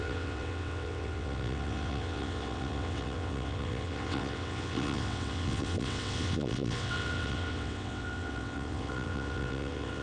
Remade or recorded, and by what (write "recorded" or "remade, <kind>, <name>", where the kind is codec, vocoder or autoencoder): remade, vocoder, WaveNeXt